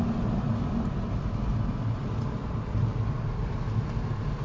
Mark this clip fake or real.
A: real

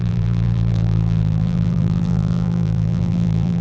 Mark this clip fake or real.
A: fake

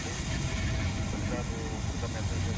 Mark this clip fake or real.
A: real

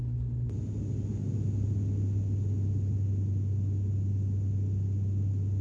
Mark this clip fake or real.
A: real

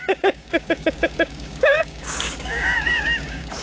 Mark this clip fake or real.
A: fake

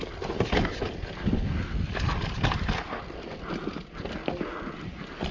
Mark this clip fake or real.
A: real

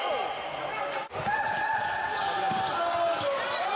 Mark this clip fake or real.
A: real